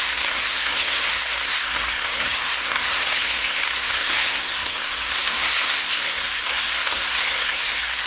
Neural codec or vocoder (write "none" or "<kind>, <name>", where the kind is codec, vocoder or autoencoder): codec, SNAC